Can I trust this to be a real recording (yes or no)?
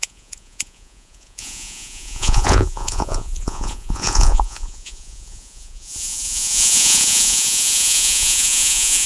no